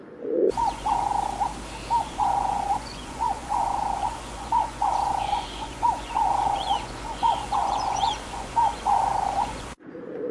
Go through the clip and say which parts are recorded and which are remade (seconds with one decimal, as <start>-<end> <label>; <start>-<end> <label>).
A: 0.0-1.1 remade; 1.1-2.0 recorded; 2.0-10.3 remade